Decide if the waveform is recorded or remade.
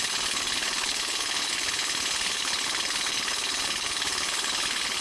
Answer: remade